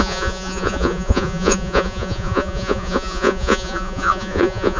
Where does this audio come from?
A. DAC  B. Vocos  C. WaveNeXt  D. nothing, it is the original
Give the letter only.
B